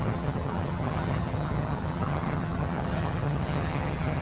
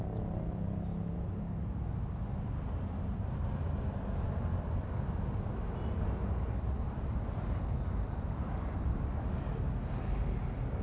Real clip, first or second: second